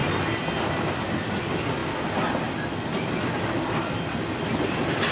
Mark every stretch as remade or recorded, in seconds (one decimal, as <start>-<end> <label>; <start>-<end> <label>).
0.0-5.1 recorded

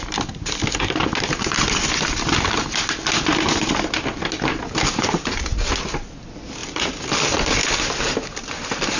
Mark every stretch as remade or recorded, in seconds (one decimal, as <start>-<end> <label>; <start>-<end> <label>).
0.0-9.0 recorded

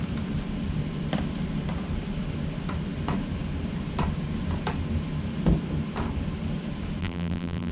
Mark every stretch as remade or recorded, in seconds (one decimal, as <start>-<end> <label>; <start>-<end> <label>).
0.0-7.0 recorded; 7.0-7.7 remade

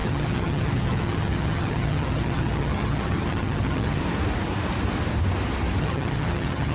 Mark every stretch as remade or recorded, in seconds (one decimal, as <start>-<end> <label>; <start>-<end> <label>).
0.0-4.0 remade; 4.0-5.8 recorded; 5.8-6.7 remade

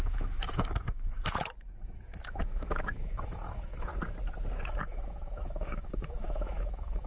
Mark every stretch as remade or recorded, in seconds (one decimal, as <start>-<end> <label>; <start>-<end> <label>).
0.0-3.9 remade; 3.9-4.8 recorded; 4.8-7.1 remade